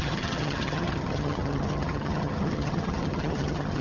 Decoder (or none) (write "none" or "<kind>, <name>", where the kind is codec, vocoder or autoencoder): vocoder, HiFi-GAN